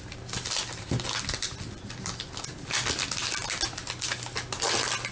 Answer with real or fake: real